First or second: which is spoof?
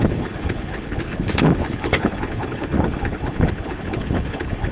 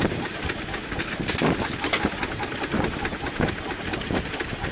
first